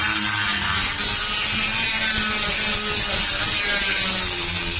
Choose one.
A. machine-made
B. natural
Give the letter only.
B